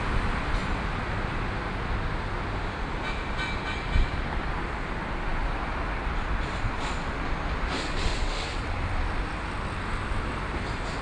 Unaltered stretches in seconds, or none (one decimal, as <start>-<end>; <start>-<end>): 0.0-8.1; 8.7-11.0